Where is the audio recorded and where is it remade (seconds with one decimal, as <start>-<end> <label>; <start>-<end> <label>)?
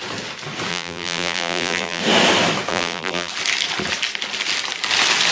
0.0-0.7 recorded; 0.7-2.0 remade; 2.0-2.7 recorded; 2.7-3.3 remade; 3.3-5.3 recorded